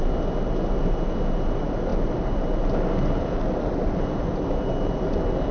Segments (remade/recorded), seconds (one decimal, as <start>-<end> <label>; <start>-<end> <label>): 0.0-5.5 recorded